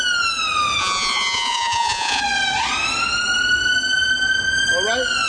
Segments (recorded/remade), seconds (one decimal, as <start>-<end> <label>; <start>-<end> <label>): 0.0-0.8 recorded; 0.8-2.2 remade; 2.2-5.3 recorded